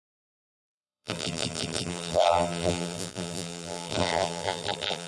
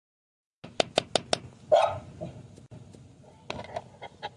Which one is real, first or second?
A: second